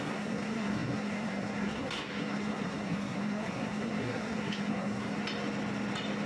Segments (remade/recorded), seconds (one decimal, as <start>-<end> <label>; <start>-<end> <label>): 0.0-5.2 remade; 5.2-6.3 recorded